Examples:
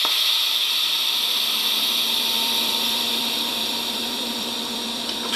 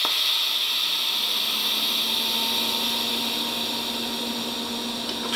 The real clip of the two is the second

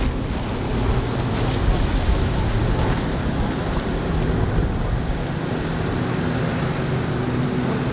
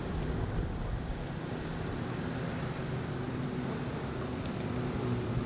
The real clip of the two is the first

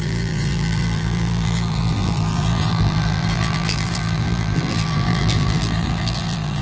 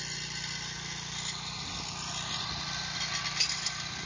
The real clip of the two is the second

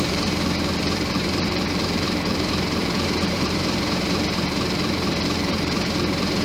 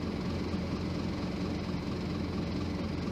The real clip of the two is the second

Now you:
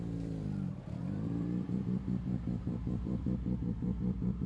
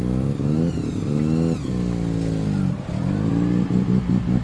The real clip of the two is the second